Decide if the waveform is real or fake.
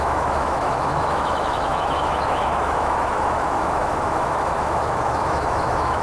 fake